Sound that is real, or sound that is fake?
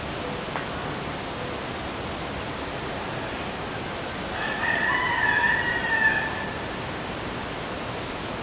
real